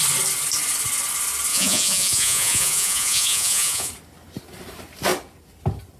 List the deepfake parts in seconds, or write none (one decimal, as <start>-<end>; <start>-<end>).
1.5-3.9